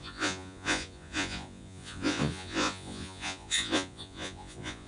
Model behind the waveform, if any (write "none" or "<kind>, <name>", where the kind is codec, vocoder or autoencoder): vocoder, Vocos